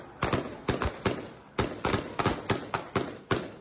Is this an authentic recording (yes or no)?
yes